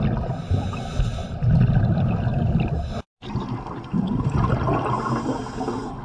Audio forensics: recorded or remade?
recorded